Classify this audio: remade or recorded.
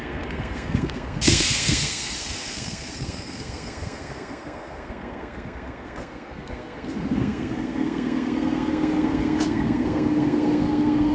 remade